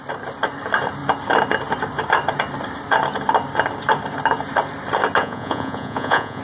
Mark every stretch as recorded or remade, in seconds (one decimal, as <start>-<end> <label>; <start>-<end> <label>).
0.0-5.2 recorded; 5.2-6.4 remade